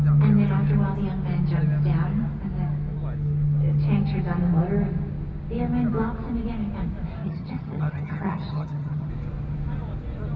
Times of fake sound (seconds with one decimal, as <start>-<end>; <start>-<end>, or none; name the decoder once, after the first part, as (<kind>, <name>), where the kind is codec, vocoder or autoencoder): 7.2-9.1 (vocoder, HiFi-GAN)